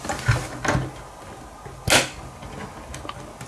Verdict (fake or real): real